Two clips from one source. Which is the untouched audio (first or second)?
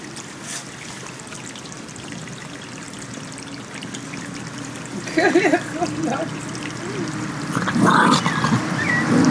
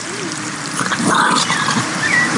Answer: first